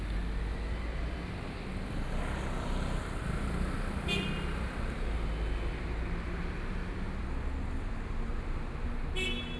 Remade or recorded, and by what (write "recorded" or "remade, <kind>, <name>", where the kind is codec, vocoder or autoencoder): recorded